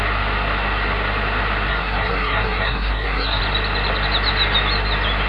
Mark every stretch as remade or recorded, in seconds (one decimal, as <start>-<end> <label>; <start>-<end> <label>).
0.0-1.7 recorded; 1.7-3.4 remade; 3.4-5.3 recorded